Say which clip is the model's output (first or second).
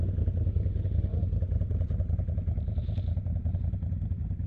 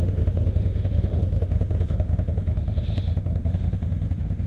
second